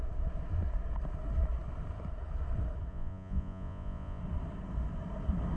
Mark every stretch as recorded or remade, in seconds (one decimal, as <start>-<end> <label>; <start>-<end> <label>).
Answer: 0.0-2.9 recorded; 2.9-4.2 remade; 4.2-5.6 recorded